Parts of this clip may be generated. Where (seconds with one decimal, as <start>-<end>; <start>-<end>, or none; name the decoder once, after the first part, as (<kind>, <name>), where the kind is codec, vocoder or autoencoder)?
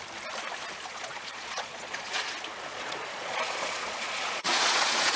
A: 0.9-2.2 (vocoder, Vocos); 2.7-5.2